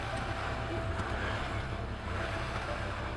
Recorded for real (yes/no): yes